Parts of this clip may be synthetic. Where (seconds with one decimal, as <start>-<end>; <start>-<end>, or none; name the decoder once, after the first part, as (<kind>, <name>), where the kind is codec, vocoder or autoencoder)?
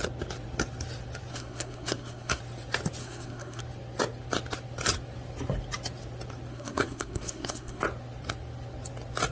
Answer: 1.3-2.4 (codec, SNAC); 3.0-3.6; 6.5-7.8